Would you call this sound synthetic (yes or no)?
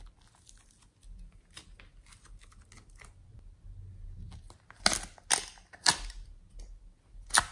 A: no